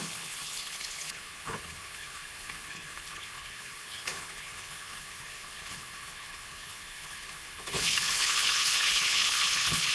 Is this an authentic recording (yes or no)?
no